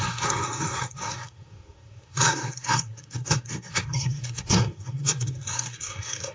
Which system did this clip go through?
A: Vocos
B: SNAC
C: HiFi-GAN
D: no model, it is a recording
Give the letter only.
B